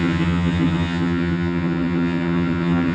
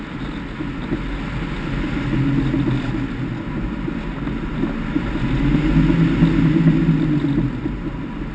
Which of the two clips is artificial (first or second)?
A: first